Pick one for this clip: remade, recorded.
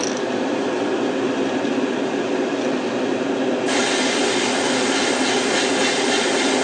recorded